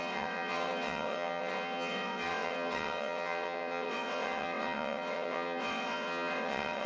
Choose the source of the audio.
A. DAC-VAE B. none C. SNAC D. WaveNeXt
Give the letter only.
D